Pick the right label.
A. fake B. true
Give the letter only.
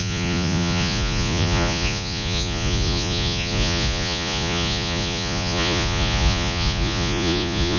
A